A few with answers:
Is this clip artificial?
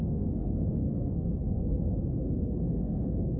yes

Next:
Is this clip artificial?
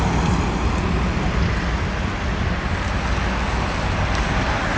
no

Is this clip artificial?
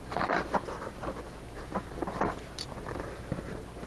no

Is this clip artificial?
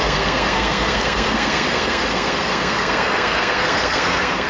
yes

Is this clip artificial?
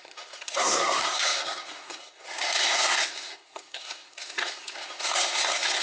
yes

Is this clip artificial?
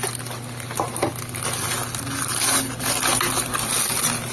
no